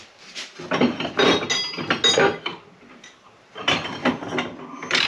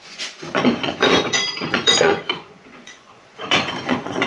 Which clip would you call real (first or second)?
first